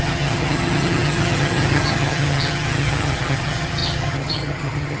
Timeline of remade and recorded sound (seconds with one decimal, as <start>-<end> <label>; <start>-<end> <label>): 0.0-5.0 remade